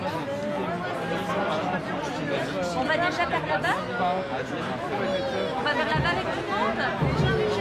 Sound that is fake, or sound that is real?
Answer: real